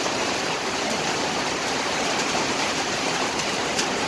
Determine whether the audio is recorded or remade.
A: remade